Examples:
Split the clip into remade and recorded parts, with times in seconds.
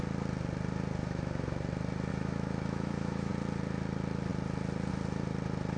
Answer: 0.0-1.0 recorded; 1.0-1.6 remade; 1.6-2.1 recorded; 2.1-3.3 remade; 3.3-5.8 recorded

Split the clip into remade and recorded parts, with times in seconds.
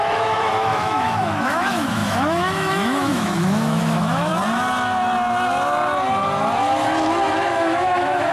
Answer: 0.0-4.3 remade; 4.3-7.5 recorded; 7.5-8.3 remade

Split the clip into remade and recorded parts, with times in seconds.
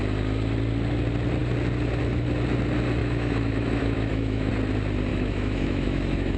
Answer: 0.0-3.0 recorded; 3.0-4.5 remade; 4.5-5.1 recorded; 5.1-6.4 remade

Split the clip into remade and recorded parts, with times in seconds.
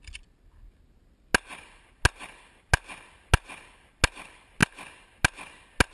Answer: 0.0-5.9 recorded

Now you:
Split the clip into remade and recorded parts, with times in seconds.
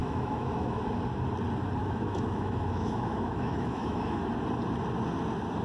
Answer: 0.0-0.9 remade; 0.9-1.8 recorded; 1.8-4.3 remade; 4.3-5.6 recorded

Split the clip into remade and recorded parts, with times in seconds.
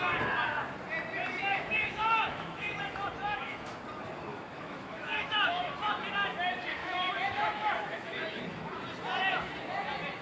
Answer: 0.0-1.4 recorded; 1.4-2.8 remade; 2.8-3.2 recorded; 3.2-3.8 remade; 3.8-4.3 recorded; 4.3-5.7 remade; 5.7-6.8 recorded; 6.8-8.4 remade; 8.4-10.2 recorded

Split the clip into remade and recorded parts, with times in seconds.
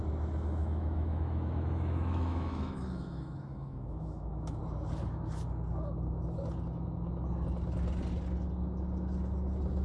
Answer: 0.0-0.6 recorded; 0.6-4.6 remade; 4.6-9.8 recorded